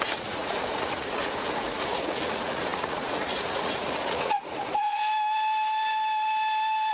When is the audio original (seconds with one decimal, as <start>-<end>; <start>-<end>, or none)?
5.0-6.9